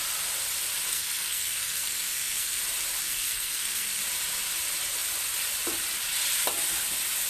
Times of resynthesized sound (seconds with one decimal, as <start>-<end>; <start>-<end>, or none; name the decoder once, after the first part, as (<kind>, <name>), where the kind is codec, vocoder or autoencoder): 0.9-2.6 (codec, SNAC); 3.0-4.0